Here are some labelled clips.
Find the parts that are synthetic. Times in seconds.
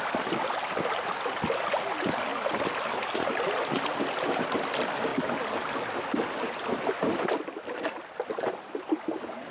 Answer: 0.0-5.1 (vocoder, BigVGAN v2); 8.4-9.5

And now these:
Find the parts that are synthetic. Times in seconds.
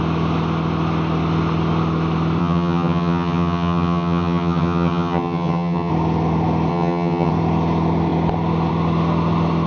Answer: 2.4-5.9 (vocoder, HiFi-GAN); 6.7-7.3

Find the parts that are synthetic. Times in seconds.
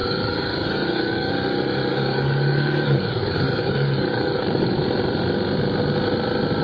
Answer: 0.0-1.3 (codec, DAC); 1.9-4.8